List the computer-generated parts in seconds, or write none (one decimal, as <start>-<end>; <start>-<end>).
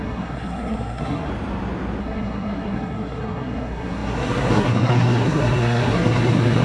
0.0-1.3; 2.0-6.6